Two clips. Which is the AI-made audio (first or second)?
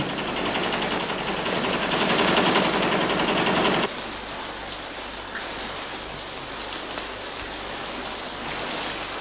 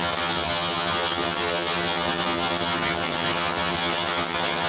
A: second